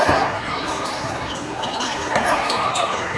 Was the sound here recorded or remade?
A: remade